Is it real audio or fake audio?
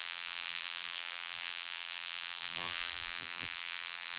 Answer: fake